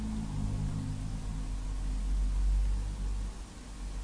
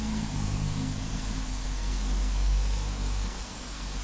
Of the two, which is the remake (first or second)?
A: second